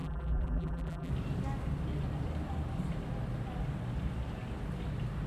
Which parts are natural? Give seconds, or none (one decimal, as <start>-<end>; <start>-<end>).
1.1-5.3